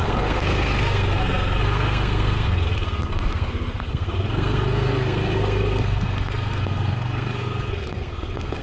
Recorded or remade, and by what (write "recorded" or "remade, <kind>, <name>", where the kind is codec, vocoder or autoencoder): remade, codec, SNAC